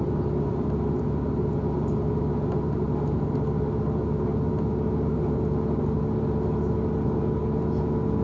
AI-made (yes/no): no